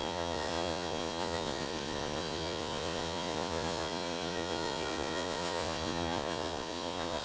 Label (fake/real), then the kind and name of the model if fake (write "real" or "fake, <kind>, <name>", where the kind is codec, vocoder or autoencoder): fake, vocoder, Vocos